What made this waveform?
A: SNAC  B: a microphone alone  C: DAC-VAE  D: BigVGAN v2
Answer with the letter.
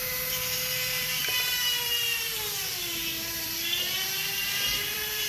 D